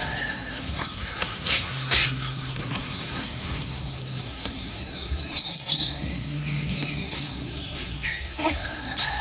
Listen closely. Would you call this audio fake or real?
fake